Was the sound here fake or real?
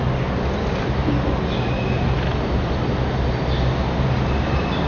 real